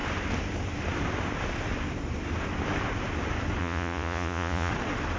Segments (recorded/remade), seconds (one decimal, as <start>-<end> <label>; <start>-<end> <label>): 0.0-3.6 recorded; 3.6-4.7 remade; 4.7-5.2 recorded